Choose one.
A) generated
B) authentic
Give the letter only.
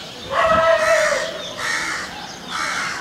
B